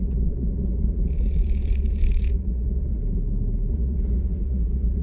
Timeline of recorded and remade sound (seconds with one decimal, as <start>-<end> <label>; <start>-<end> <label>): 0.0-3.0 remade; 3.0-3.7 recorded; 3.7-5.0 remade